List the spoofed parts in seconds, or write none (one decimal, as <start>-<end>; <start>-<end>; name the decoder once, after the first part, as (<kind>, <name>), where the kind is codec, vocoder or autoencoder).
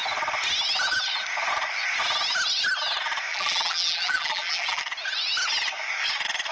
3.3-4.8 (vocoder, BigVGAN v2)